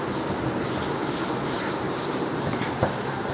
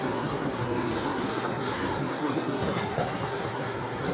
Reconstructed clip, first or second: second